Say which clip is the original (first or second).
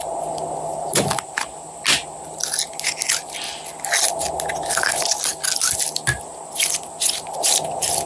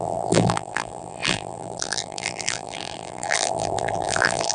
first